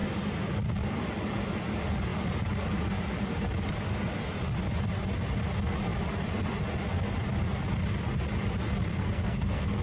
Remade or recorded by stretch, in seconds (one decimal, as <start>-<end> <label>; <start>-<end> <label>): 0.0-8.9 recorded; 8.9-9.8 remade